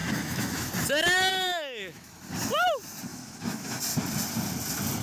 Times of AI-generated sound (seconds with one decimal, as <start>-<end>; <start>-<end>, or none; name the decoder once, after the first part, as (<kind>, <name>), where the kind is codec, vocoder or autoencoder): 0.0-0.7 (autoencoder, DAC-VAE); 1.3-2.2; 3.1-3.8